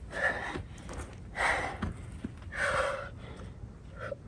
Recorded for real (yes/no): yes